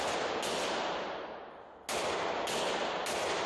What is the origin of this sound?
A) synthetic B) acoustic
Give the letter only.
B